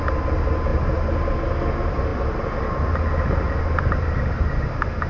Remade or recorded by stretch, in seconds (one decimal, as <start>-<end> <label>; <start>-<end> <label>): 0.0-5.1 recorded